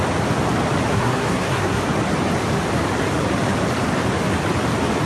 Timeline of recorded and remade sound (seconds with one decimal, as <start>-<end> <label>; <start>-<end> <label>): 0.0-0.9 recorded; 0.9-1.8 remade; 1.8-5.1 recorded

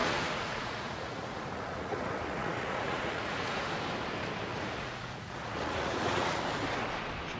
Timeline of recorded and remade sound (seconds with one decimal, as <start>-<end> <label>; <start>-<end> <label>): 0.0-3.7 remade; 3.7-4.5 recorded; 4.5-6.4 remade; 6.4-7.4 recorded

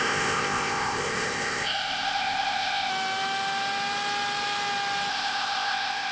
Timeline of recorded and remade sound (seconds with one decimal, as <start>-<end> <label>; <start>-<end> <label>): 0.0-2.9 remade; 2.9-5.1 recorded; 5.1-6.1 remade